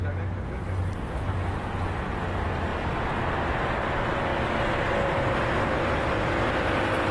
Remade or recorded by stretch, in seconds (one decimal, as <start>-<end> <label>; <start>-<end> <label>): 0.0-7.1 recorded